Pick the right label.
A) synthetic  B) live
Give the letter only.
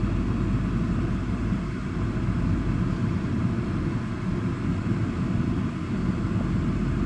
B